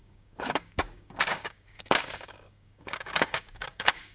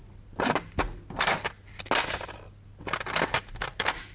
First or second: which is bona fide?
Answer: second